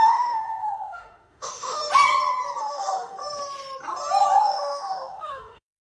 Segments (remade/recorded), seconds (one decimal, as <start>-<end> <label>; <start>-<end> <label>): 0.0-1.8 remade; 1.8-2.6 recorded; 2.6-3.2 remade; 3.2-4.4 recorded; 4.4-5.8 remade